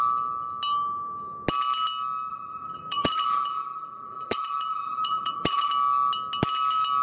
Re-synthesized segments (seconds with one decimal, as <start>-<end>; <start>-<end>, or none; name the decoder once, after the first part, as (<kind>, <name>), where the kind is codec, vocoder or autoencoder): 2.3-5.7 (vocoder, Vocos)